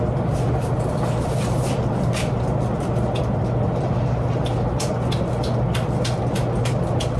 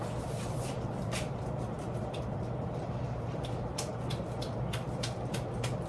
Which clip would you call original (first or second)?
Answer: first